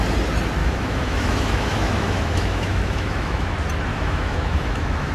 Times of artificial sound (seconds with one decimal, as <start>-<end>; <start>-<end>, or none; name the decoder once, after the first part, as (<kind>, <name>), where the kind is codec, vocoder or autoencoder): 0.6-3.5 (autoencoder, DAC-VAE); 3.9-5.1